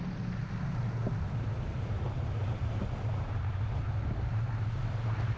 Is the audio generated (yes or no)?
no